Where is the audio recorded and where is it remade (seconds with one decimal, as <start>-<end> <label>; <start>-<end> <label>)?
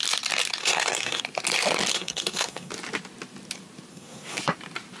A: 0.0-0.6 recorded; 0.6-1.2 remade; 1.2-1.9 recorded; 1.9-2.7 remade; 2.7-3.9 recorded; 3.9-4.4 remade; 4.4-5.0 recorded